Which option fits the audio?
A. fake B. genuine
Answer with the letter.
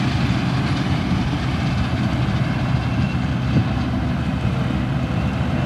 B